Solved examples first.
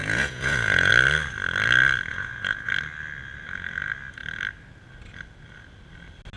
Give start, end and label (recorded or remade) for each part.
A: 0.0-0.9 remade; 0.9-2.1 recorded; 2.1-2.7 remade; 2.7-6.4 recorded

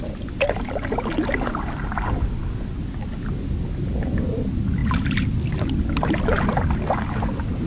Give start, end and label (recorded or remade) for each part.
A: 0.0-7.7 recorded

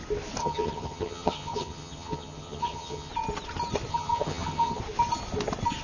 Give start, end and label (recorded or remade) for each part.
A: 0.0-0.4 recorded; 0.4-3.1 remade; 3.1-3.9 recorded; 3.9-4.8 remade; 4.8-5.8 recorded

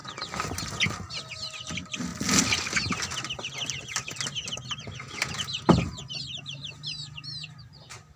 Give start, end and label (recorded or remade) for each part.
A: 0.0-8.2 recorded

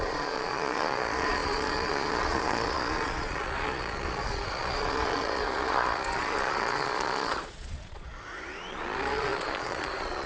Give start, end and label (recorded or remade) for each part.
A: 0.0-8.1 remade; 8.1-8.7 recorded; 8.7-10.3 remade

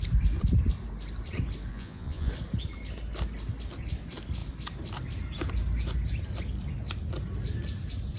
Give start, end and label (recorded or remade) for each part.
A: 0.0-1.7 recorded; 1.7-2.3 remade; 2.3-8.2 recorded

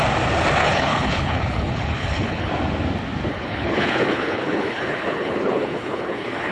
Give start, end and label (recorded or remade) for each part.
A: 0.0-0.6 recorded; 0.6-2.5 remade; 2.5-3.3 recorded; 3.3-6.5 remade